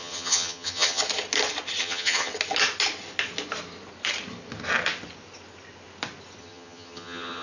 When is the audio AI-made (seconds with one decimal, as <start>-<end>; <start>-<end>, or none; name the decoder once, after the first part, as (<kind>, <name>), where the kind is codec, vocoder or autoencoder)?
0.0-1.0 (vocoder, HiFi-GAN); 1.8-2.3; 6.4-7.4